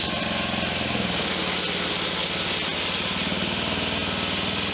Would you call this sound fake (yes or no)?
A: no